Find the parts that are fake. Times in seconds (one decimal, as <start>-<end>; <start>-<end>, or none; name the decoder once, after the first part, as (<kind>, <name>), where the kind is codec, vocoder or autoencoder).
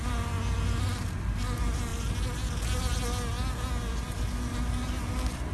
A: none